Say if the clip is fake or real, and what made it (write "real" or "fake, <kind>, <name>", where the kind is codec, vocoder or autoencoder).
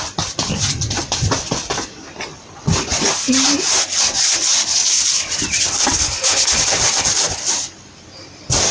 fake, vocoder, BigVGAN v2